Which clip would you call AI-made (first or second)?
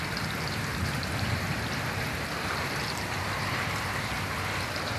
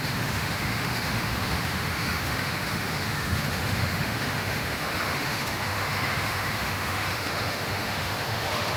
second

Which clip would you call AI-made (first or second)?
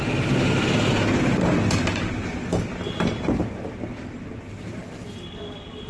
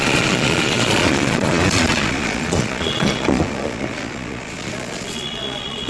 second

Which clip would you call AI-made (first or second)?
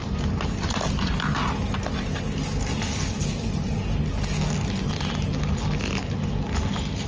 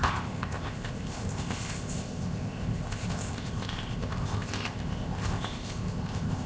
second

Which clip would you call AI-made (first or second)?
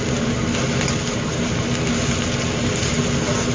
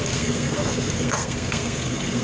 second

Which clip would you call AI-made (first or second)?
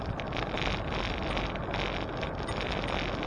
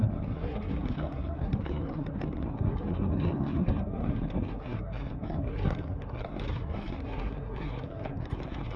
second